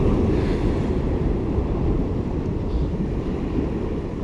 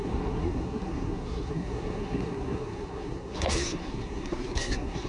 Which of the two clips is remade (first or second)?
second